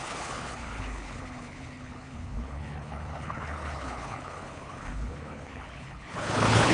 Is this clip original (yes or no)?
no